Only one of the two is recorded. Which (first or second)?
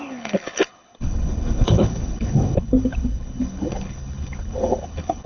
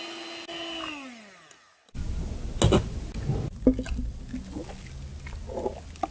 second